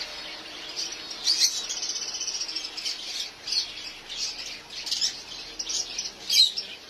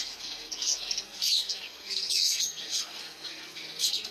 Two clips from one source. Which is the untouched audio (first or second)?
first